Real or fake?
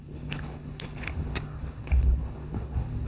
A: fake